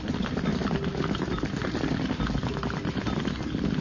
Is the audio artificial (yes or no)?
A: no